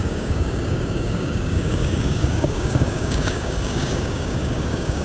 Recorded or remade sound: remade